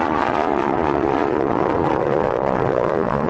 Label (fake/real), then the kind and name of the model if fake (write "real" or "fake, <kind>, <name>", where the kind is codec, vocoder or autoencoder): fake, vocoder, Vocos